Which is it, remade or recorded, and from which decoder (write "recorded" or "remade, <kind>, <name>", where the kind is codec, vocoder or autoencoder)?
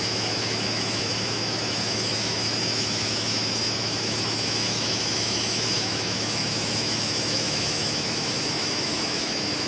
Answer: remade, autoencoder, DAC-VAE